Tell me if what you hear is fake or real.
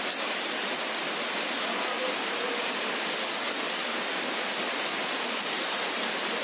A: real